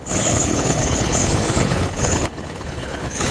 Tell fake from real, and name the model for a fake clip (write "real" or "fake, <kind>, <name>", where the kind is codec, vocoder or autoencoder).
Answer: fake, codec, HILCodec